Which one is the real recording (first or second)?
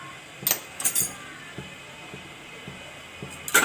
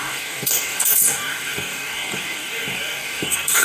first